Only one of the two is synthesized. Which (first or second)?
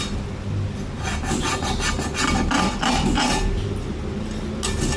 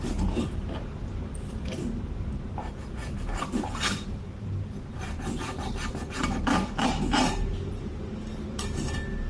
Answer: second